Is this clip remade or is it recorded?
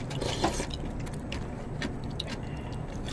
recorded